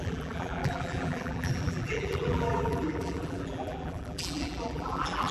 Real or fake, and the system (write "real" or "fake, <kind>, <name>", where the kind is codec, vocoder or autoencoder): fake, vocoder, BigVGAN v2